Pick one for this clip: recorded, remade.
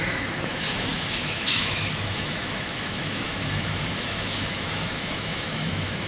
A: remade